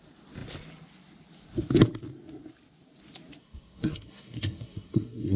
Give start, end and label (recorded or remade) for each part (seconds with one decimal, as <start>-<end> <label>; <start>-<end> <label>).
0.0-3.4 recorded; 3.4-5.4 remade